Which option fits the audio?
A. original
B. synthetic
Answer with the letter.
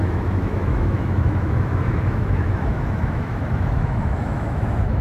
B